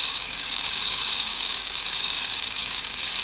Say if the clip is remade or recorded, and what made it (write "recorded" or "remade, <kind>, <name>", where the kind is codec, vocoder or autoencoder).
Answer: remade, codec, DAC